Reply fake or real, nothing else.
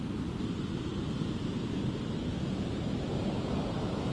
real